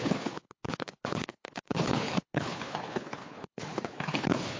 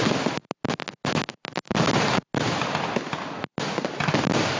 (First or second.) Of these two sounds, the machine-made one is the first